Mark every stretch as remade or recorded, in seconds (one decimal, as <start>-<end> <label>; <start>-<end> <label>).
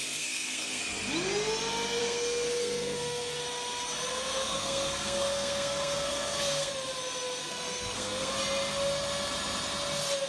0.0-0.8 remade; 0.8-2.0 recorded; 2.0-3.4 remade; 3.4-4.1 recorded; 4.1-6.7 remade; 6.7-7.4 recorded; 7.4-8.3 remade; 8.3-10.3 recorded